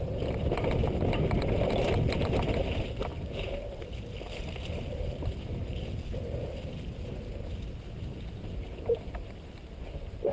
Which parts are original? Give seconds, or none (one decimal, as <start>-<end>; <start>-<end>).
0.0-10.3